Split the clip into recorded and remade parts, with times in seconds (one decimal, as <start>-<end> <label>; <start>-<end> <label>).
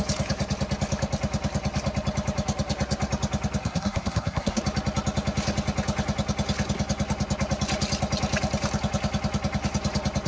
0.0-3.6 recorded; 3.6-4.6 remade; 4.6-10.3 recorded